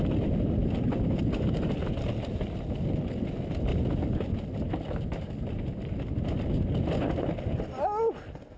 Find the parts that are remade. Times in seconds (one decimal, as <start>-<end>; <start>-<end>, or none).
none